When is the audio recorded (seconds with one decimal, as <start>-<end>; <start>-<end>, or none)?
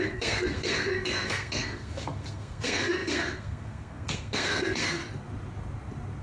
5.0-6.2